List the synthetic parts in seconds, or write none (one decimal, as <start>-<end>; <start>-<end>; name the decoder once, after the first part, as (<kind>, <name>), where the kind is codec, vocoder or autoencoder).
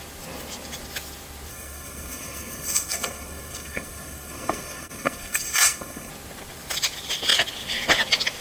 1.5-6.1 (codec, SNAC)